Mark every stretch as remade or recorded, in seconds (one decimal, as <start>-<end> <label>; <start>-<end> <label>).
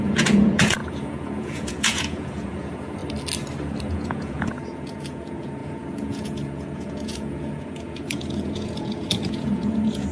0.0-3.0 remade; 3.0-3.8 recorded; 3.8-10.1 remade